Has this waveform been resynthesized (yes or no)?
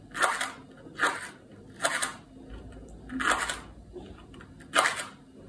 no